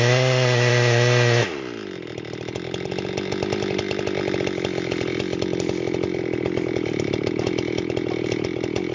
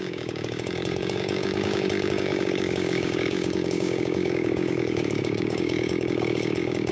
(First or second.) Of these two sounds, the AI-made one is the second